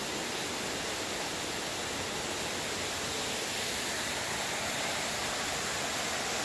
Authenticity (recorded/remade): recorded